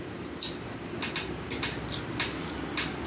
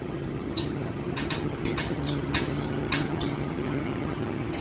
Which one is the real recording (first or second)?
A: first